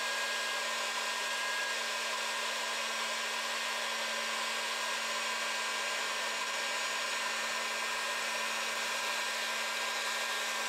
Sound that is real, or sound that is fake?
real